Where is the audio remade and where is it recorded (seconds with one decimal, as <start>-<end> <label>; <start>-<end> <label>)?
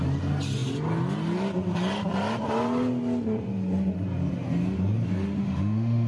0.0-5.4 recorded; 5.4-6.1 remade